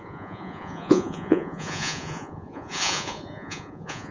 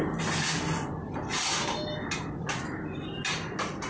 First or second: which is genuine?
second